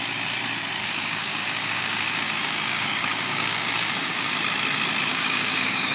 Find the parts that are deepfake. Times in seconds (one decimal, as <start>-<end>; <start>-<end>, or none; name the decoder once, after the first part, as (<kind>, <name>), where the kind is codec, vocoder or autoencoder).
0.8-4.3 (codec, DAC); 5.1-5.9